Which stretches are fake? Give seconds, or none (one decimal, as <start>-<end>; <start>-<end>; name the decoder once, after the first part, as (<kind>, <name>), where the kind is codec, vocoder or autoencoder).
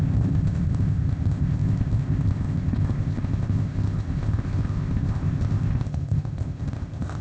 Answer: 0.0-7.2 (codec, ZipCodec)